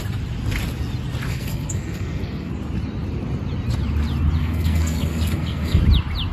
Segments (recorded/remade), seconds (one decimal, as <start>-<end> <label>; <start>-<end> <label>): 0.0-1.3 recorded; 1.3-2.5 remade; 2.5-4.4 recorded; 4.4-5.8 remade; 5.8-6.3 recorded